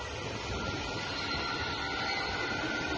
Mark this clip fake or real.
real